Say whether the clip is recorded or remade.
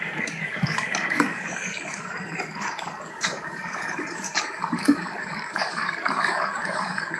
remade